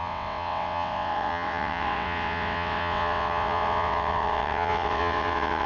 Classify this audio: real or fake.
fake